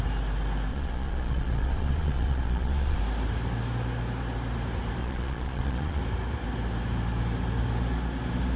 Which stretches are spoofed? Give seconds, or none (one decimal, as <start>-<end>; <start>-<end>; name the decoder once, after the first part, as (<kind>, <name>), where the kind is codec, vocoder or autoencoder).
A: 0.7-3.0 (vocoder, Vocos); 5.0-6.0